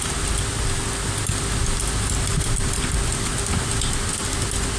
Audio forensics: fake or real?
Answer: real